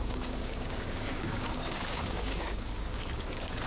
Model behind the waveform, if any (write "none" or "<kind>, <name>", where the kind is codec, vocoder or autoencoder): codec, DAC